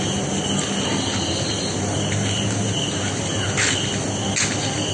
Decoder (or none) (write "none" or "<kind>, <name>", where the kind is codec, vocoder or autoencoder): none